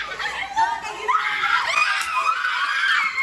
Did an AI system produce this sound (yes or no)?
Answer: no